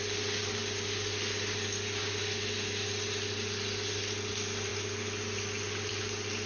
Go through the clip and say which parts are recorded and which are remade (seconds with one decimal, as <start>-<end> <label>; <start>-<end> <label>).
0.0-6.5 recorded